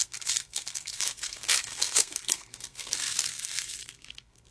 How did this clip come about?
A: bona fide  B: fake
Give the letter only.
B